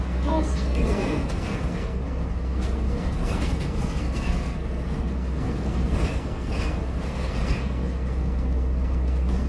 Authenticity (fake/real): fake